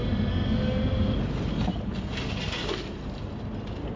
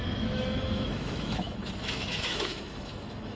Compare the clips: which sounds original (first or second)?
first